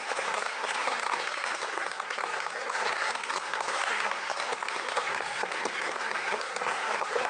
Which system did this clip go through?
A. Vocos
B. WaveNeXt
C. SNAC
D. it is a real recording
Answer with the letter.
C